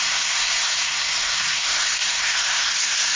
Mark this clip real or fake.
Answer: fake